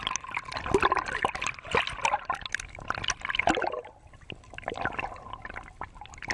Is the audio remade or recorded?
recorded